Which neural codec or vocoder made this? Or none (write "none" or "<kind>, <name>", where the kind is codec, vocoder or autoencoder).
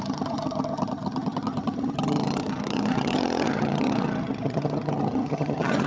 vocoder, HiFi-GAN